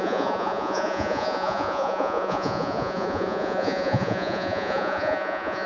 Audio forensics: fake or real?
fake